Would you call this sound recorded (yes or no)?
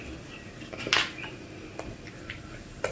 yes